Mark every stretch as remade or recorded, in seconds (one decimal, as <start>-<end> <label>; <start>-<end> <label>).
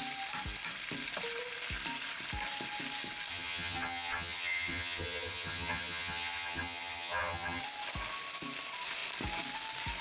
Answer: 0.0-3.3 recorded; 3.3-7.6 remade; 7.6-10.0 recorded